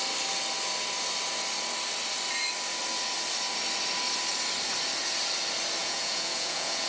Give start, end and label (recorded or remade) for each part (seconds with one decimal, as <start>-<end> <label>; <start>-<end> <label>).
0.0-5.8 recorded; 5.8-6.9 remade